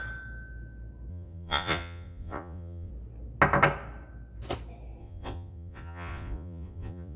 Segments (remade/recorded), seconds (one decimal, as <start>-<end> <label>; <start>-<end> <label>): 0.0-1.1 recorded; 1.1-2.9 remade; 2.9-5.0 recorded; 5.0-7.2 remade